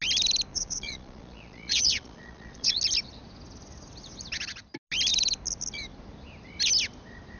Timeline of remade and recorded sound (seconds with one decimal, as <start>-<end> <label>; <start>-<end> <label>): 0.0-0.5 recorded; 0.5-2.8 remade; 2.8-7.4 recorded